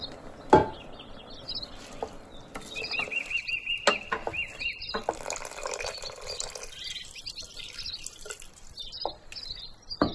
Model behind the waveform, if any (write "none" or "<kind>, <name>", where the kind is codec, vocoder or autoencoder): none